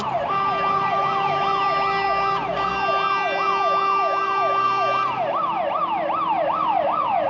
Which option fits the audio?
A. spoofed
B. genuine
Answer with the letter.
B